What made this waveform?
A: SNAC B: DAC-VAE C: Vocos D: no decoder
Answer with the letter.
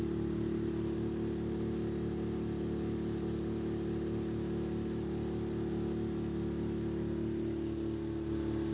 D